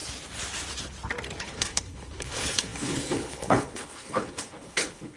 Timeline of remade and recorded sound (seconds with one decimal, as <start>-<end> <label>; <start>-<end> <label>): 0.0-1.4 recorded; 1.4-5.2 remade